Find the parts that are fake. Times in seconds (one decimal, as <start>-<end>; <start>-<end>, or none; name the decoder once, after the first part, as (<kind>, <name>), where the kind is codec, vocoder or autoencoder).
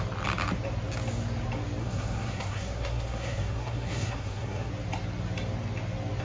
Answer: 1.8-4.7 (codec, SNAC)